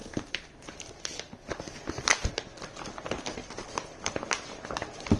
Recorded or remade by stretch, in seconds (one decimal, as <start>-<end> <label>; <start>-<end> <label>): 0.0-3.4 recorded; 3.4-4.1 remade; 4.1-5.2 recorded